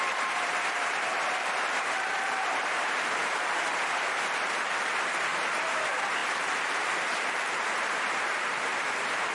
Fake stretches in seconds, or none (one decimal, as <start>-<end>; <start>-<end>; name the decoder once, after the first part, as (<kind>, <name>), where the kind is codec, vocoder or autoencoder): 0.0-6.2 (vocoder, BigVGAN v2); 6.9-9.3

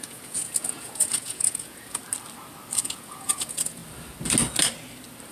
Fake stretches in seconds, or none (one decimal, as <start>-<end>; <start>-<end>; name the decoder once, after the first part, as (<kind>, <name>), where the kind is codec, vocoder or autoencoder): 0.0-2.0 (vocoder, Vocos); 2.8-3.8

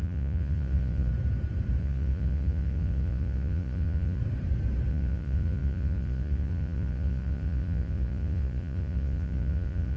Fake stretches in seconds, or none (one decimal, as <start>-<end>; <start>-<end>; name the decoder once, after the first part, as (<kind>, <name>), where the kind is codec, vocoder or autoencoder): 0.0-1.1 (vocoder, Vocos); 1.8-4.2; 4.9-10.0

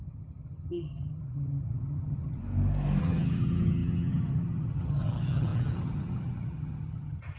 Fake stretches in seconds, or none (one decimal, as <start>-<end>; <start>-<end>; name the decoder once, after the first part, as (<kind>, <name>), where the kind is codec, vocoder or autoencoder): 0.0-2.4 (vocoder, HiFi-GAN); 3.0-7.4